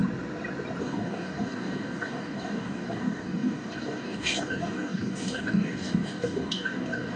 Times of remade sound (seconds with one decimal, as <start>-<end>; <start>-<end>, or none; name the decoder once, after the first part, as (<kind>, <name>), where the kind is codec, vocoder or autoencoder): 0.8-7.2 (codec, DAC)